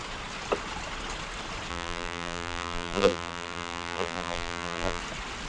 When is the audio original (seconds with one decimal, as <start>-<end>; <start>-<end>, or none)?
0.0-1.7; 5.0-5.5